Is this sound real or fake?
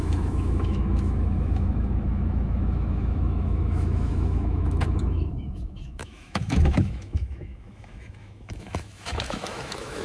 fake